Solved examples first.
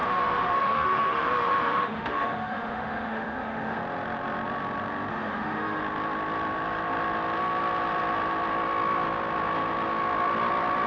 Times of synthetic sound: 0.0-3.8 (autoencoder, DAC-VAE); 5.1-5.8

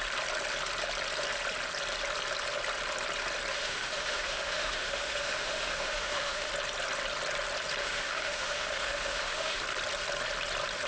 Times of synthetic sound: 3.5-6.5 (autoencoder, DAC-VAE); 7.8-9.6

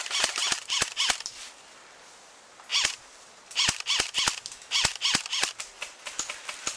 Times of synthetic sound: none

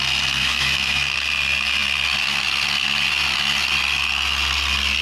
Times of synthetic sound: 0.4-1.0 (autoencoder, DAC-VAE)